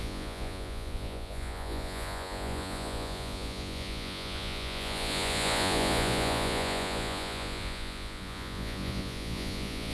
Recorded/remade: remade